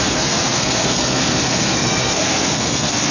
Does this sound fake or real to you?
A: fake